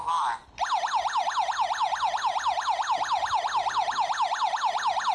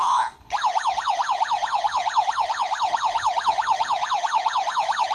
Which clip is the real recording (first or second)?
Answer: first